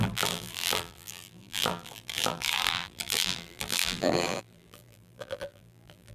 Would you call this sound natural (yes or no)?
no